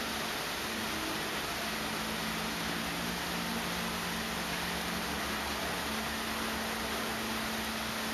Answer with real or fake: real